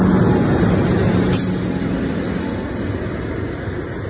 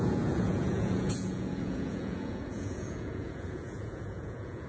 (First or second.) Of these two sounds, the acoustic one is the first